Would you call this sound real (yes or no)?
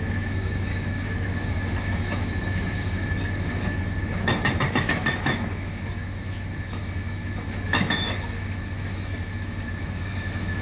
no